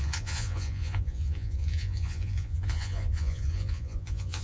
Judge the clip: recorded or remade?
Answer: remade